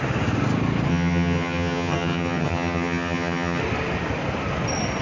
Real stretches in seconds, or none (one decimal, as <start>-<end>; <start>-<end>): 0.0-0.9; 3.6-5.0